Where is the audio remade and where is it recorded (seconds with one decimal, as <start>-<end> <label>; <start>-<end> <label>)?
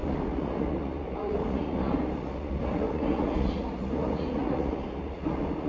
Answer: 0.0-5.7 remade